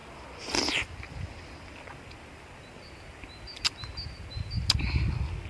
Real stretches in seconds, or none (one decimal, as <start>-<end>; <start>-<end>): 0.0-5.5